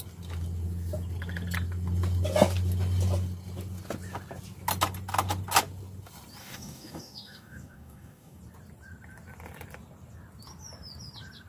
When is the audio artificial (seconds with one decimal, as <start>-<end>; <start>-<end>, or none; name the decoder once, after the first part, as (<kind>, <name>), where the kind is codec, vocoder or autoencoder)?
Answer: 6.4-8.4 (codec, DAC)